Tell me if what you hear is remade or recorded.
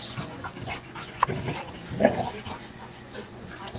remade